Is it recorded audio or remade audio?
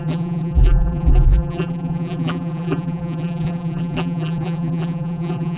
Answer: remade